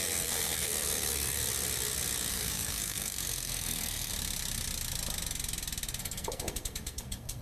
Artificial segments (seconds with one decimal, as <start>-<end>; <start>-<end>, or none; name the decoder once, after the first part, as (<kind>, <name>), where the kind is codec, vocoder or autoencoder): 0.0-1.4 (codec, SNAC); 2.3-4.1; 6.0-7.4